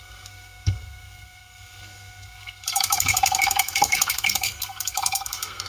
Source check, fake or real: fake